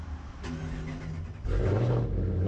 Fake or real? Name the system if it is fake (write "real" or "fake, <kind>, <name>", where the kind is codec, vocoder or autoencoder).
real